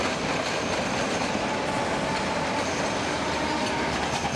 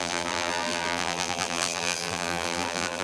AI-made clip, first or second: second